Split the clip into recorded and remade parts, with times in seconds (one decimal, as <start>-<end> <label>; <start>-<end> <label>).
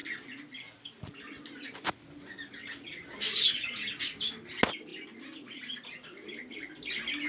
0.0-7.3 recorded